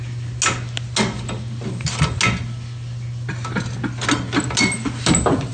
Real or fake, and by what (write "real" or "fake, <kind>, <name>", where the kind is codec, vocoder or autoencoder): real